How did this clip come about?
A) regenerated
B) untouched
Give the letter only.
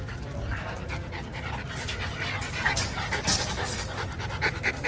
B